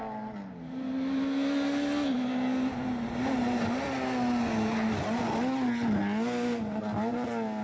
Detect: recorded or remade recorded